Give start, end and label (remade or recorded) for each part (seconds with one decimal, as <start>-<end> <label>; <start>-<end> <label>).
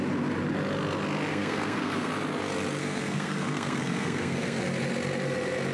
0.0-1.3 recorded; 1.3-2.1 remade; 2.1-2.8 recorded; 2.8-4.6 remade; 4.6-5.7 recorded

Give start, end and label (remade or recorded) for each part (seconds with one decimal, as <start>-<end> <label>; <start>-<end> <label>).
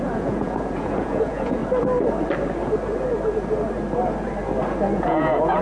0.0-1.6 remade; 1.6-5.0 recorded; 5.0-5.6 remade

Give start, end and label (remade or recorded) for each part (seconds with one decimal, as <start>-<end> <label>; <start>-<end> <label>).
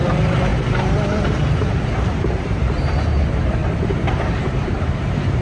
0.0-3.6 remade; 3.6-4.1 recorded; 4.1-5.4 remade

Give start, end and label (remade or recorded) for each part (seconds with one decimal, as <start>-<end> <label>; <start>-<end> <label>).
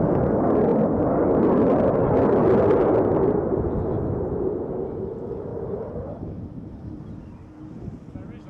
0.0-5.5 recorded; 5.5-7.0 remade; 7.0-8.5 recorded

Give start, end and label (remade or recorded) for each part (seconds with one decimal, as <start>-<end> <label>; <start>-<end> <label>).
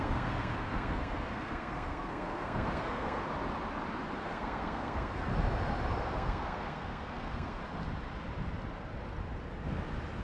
0.0-3.2 remade; 3.2-4.2 recorded; 4.2-5.3 remade; 5.3-6.0 recorded; 6.0-7.6 remade; 7.6-10.2 recorded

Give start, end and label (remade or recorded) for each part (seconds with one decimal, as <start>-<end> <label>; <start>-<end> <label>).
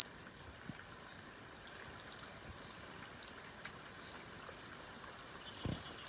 0.0-6.1 recorded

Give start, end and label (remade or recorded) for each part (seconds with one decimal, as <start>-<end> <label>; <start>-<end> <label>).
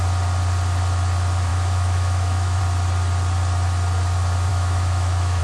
0.0-1.5 recorded; 1.5-2.6 remade; 2.6-4.5 recorded; 4.5-5.4 remade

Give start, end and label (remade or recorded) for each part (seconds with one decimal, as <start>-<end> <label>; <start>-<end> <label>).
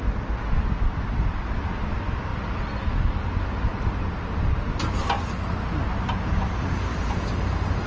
0.0-7.9 recorded